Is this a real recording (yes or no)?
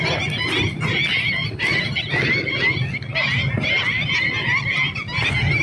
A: yes